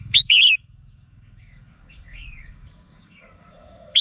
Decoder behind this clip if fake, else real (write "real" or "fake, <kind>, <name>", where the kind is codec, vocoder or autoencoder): fake, codec, DAC